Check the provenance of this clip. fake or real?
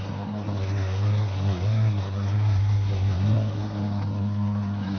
fake